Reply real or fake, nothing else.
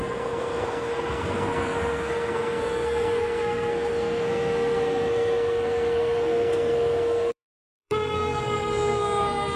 fake